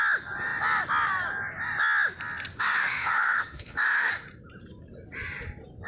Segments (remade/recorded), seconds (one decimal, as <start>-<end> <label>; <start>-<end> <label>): 0.0-2.5 recorded; 2.5-4.1 remade; 4.1-5.9 recorded